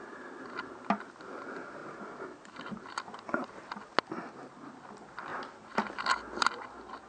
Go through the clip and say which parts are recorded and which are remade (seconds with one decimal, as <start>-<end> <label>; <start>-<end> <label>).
0.0-7.1 recorded